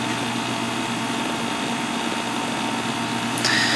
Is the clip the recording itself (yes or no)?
yes